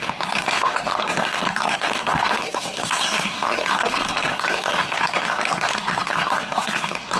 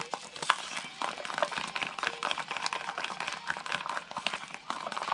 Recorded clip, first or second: second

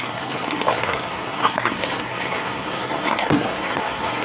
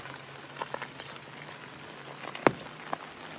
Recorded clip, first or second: second